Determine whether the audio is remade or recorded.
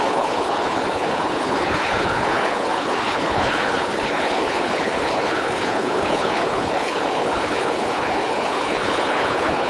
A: remade